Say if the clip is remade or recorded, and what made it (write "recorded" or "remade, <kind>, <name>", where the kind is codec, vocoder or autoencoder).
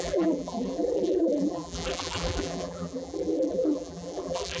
remade, vocoder, BigVGAN v2